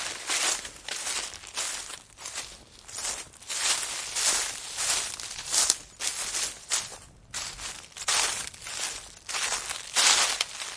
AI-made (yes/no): no